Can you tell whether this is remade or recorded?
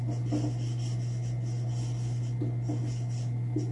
recorded